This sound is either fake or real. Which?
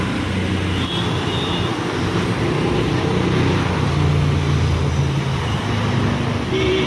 real